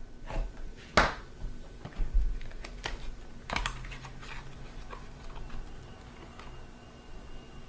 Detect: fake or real real